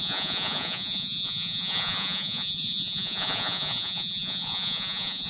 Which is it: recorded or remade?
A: remade